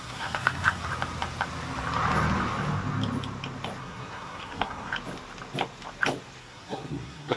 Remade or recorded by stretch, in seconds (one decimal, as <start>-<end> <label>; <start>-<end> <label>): 0.0-0.9 remade; 0.9-3.8 recorded; 3.8-4.9 remade; 4.9-6.4 recorded; 6.4-7.4 remade